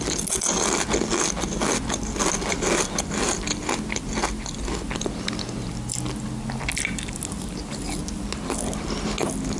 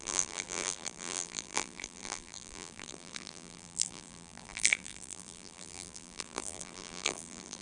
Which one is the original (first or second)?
first